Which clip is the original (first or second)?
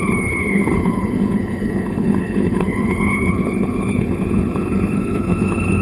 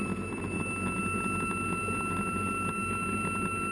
second